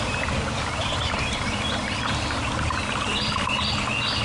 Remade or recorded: recorded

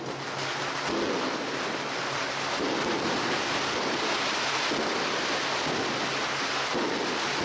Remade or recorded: recorded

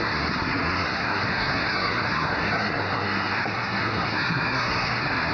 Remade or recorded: remade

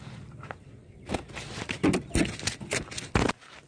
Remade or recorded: recorded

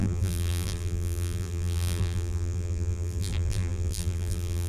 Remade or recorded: remade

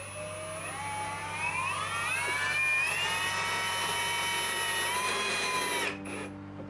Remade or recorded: recorded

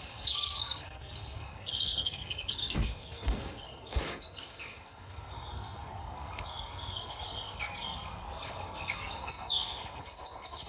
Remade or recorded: remade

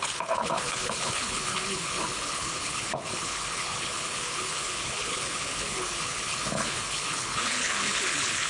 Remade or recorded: remade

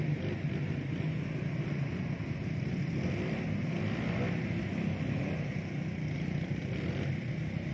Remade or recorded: recorded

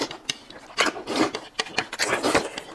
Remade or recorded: recorded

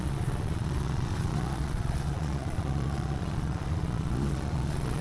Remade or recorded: remade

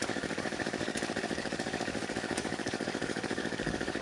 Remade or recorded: remade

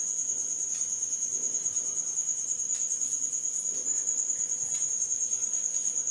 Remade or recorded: recorded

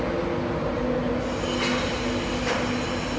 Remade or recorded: recorded